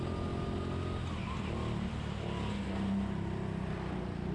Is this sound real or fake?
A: real